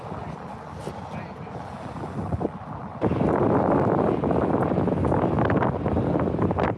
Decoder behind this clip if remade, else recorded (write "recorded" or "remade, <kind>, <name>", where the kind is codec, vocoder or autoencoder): recorded